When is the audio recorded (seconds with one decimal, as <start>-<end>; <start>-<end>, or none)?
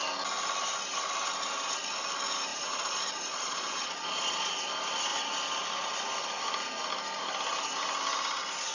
0.0-2.5; 4.5-8.7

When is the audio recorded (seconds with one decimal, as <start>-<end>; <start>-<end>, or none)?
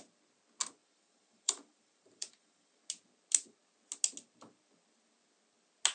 0.0-0.8; 2.8-5.9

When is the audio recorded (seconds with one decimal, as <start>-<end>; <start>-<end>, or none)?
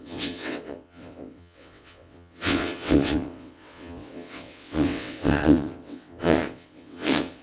none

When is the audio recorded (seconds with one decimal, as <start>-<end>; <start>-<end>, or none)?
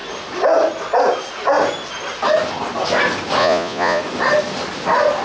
0.0-3.4; 4.0-5.2